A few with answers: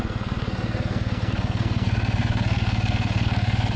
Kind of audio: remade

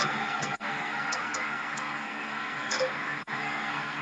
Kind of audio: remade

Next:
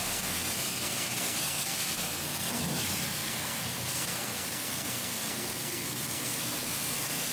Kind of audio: remade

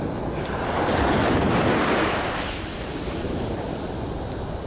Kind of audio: recorded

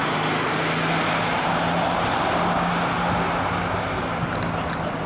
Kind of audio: recorded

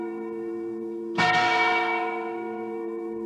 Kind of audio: remade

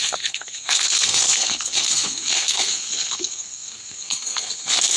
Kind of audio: remade